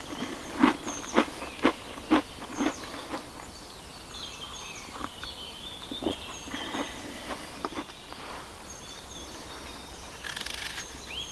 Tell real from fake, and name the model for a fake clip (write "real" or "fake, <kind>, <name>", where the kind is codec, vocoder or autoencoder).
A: real